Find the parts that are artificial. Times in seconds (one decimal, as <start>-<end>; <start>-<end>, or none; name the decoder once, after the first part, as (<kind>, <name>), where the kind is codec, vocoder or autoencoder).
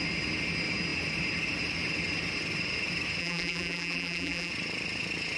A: 3.2-4.5 (vocoder, BigVGAN v2)